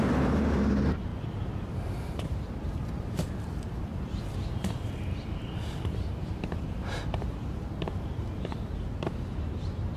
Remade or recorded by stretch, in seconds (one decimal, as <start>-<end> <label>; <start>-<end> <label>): 0.0-1.1 remade; 1.1-1.6 recorded; 1.6-10.0 remade